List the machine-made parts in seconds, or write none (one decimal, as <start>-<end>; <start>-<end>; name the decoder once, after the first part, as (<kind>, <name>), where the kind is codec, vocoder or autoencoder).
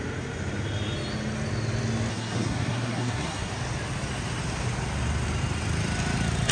2.1-3.5 (codec, SNAC)